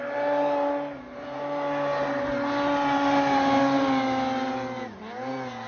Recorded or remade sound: recorded